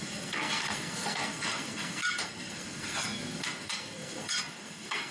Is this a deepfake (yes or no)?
yes